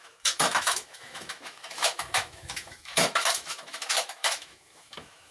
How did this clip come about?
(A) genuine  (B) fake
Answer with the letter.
B